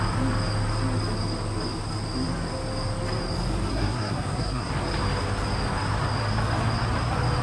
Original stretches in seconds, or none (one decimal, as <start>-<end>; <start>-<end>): 0.0-3.7; 4.7-7.4